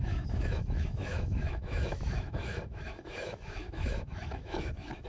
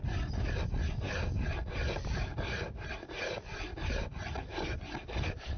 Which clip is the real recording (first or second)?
second